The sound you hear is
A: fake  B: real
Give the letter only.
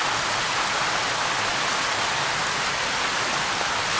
B